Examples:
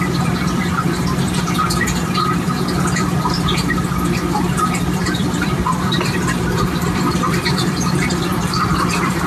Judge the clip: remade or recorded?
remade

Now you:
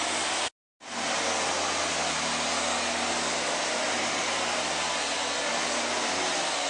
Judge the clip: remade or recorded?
recorded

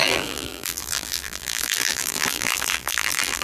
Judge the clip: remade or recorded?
remade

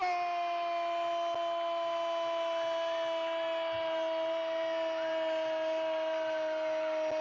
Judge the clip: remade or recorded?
recorded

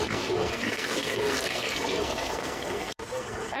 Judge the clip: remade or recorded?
remade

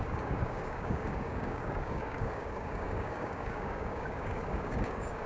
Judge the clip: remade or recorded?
remade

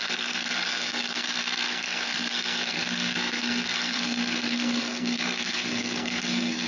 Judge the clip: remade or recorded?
remade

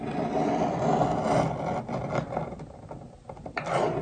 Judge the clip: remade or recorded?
recorded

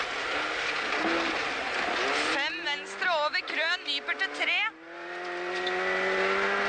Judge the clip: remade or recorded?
recorded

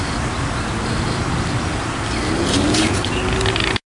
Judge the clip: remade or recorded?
recorded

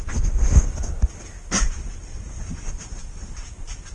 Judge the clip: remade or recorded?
recorded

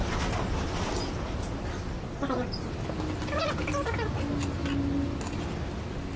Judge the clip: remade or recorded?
recorded